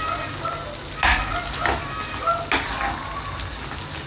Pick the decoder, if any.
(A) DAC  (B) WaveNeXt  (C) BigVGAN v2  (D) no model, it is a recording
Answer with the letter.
D